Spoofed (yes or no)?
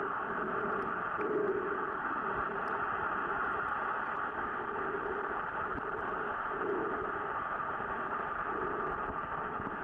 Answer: no